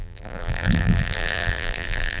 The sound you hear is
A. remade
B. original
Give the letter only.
A